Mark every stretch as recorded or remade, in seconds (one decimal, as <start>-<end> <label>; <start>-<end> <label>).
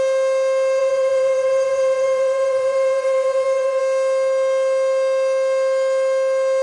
0.0-0.8 recorded; 0.8-3.8 remade; 3.8-6.6 recorded